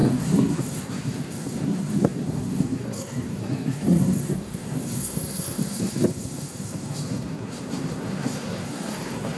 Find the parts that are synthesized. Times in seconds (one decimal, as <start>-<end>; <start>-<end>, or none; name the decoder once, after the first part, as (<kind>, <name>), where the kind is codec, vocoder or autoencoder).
0.0-9.4 (codec, SNAC)